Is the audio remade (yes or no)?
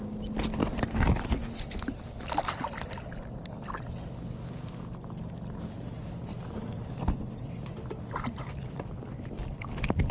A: no